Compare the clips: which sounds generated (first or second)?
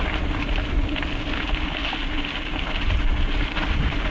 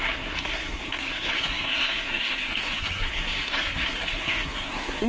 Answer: second